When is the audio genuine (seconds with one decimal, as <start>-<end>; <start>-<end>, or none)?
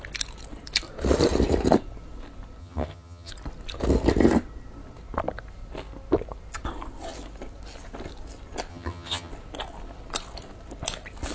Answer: 0.0-2.6; 3.3-8.7; 9.3-11.3